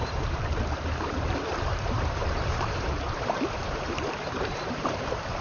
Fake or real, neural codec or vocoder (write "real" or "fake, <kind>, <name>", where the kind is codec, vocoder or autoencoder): fake, vocoder, BigVGAN v2